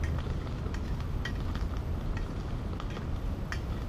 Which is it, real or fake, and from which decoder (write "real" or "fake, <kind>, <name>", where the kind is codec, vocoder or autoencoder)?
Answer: real